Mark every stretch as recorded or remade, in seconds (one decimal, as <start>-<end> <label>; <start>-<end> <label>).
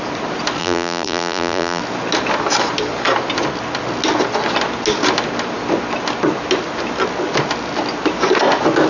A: 0.0-0.6 recorded; 0.6-1.8 remade; 1.8-8.9 recorded